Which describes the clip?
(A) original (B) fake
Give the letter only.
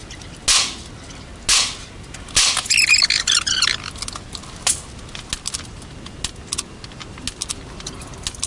A